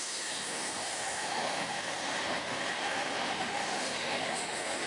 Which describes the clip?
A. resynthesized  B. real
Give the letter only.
A